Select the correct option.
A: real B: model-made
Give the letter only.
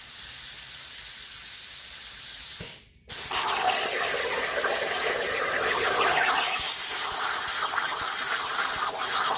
A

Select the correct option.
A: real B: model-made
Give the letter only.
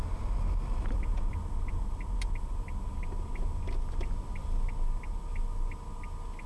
A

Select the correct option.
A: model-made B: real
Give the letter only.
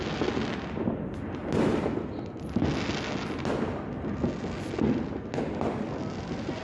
B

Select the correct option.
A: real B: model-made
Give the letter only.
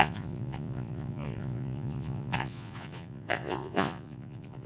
B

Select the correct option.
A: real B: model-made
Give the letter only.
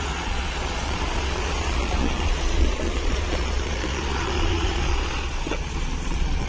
B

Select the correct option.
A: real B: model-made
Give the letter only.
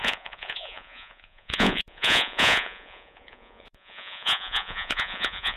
B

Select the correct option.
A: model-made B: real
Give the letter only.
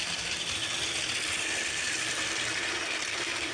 B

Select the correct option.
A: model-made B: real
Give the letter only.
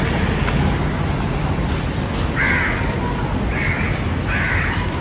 B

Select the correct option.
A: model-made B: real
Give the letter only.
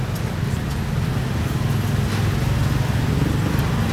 B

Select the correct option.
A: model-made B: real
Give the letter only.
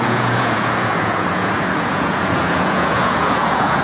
A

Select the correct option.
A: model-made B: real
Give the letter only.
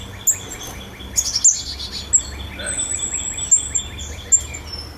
B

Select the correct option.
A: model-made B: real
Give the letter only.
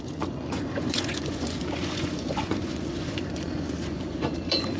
A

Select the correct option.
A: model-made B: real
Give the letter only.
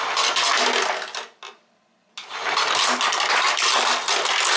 B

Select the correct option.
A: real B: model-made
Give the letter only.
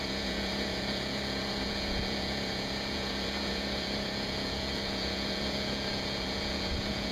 B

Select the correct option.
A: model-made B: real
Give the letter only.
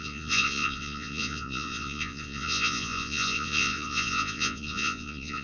A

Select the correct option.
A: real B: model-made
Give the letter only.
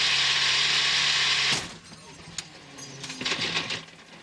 A